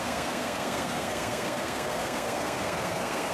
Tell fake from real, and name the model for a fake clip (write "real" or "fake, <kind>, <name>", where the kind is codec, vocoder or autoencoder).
fake, codec, SNAC